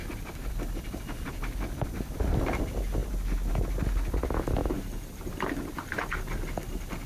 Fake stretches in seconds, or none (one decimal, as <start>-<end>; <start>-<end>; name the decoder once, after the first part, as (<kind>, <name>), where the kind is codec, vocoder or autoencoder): 0.0-0.5 (vocoder, BigVGAN v2); 3.0-3.5; 4.6-6.0